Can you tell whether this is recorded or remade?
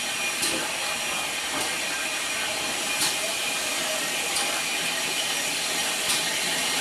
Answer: recorded